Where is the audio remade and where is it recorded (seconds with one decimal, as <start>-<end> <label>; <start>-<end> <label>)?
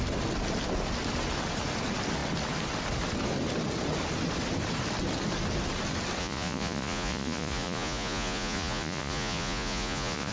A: 0.0-6.2 recorded; 6.2-10.3 remade